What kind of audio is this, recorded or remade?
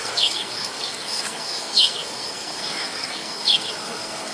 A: remade